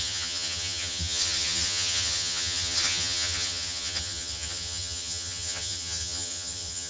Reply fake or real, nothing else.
fake